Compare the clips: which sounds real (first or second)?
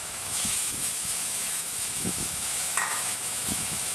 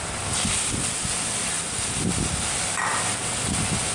second